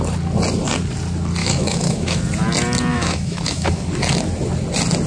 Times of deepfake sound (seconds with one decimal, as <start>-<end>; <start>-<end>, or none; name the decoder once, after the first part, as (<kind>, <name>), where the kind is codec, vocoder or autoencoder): 1.4-2.2 (autoencoder, DAC-VAE); 2.9-3.9